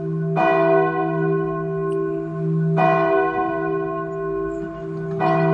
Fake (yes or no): no